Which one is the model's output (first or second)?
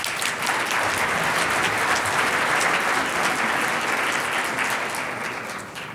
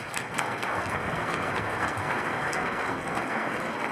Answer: second